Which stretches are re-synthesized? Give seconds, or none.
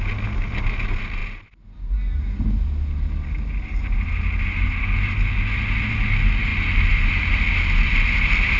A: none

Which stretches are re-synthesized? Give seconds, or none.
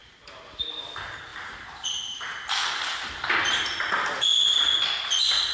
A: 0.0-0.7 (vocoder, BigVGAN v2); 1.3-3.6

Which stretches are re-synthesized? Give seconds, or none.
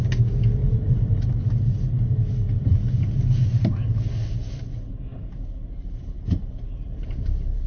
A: 0.6-1.2 (vocoder, BigVGAN v2); 5.1-7.7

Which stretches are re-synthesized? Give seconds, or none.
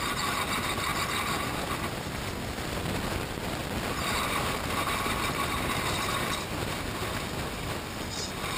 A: 0.9-2.3 (vocoder, BigVGAN v2); 3.6-7.3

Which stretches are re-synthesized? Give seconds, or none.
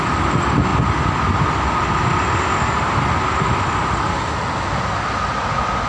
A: none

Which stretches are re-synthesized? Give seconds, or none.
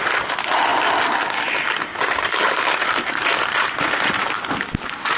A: 1.9-4.5 (vocoder, BigVGAN v2)